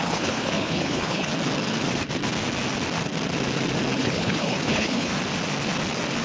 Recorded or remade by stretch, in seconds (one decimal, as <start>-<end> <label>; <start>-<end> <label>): 0.0-1.3 remade; 1.3-4.0 recorded; 4.0-5.1 remade; 5.1-6.2 recorded